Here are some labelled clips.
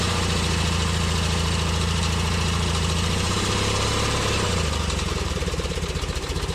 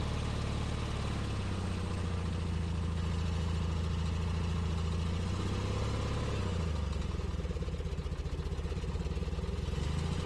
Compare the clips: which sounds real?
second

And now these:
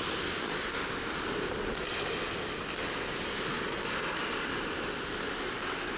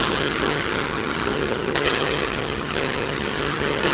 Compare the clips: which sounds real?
first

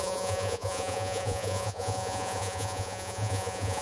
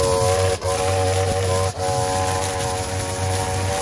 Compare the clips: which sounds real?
second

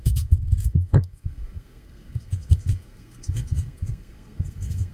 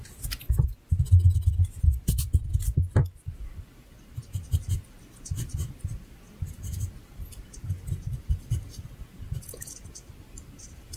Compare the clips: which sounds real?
second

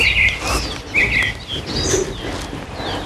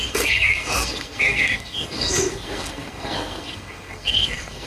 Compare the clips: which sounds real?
first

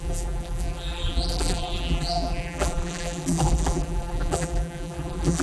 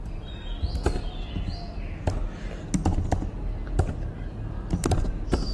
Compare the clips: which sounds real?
second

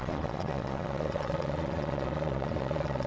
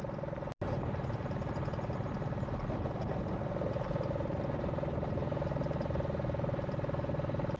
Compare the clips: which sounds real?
second